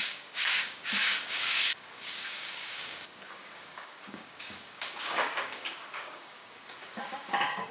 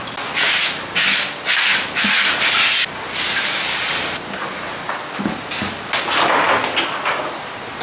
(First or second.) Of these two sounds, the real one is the second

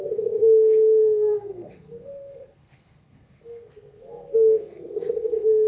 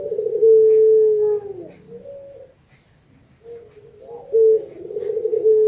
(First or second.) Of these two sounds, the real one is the second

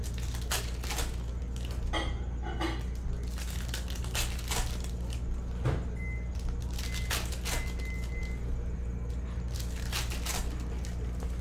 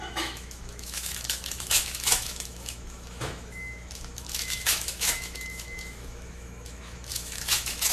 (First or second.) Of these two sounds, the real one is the first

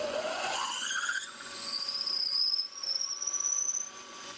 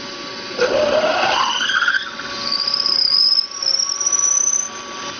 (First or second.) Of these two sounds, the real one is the second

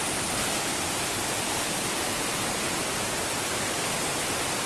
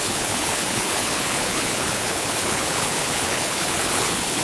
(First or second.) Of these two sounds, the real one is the first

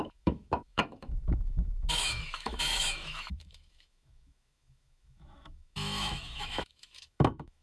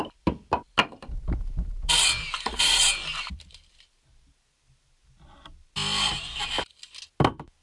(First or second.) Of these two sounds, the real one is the second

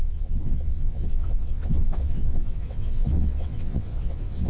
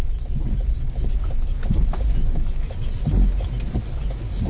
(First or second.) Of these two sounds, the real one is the second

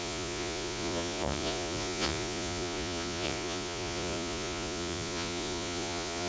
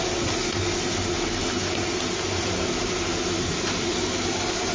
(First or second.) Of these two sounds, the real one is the second